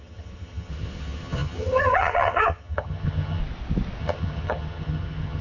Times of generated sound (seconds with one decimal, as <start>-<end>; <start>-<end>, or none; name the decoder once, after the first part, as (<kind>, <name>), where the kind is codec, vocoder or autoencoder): 0.0-3.4 (vocoder, HiFi-GAN); 4.0-5.4